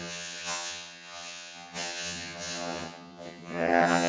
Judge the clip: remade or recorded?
remade